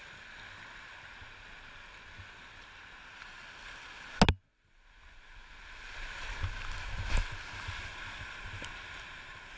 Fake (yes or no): no